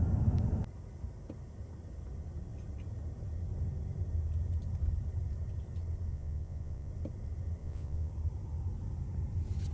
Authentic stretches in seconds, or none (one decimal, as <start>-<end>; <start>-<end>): 0.0-6.1; 6.9-7.6; 8.1-9.7